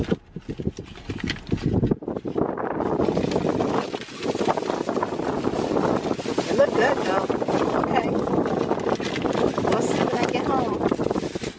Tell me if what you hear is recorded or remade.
recorded